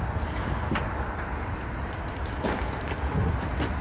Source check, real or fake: real